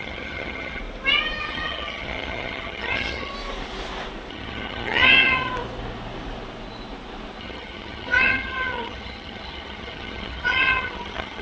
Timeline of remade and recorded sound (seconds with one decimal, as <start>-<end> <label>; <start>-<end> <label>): 0.0-0.8 remade; 0.8-1.4 recorded; 1.4-3.3 remade; 3.3-4.3 recorded; 4.3-5.5 remade; 5.5-7.4 recorded; 7.4-11.4 remade